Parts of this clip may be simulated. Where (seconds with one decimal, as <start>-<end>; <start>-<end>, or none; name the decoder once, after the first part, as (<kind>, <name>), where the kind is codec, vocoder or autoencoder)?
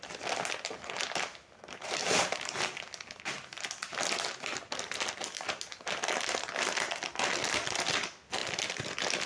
none